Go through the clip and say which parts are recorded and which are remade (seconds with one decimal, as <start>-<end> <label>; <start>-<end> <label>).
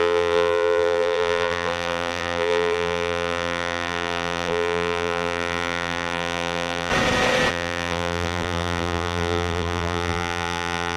0.0-6.9 remade; 6.9-7.5 recorded; 7.5-11.0 remade